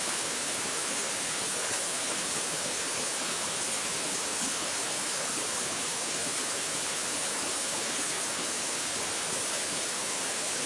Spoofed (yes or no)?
yes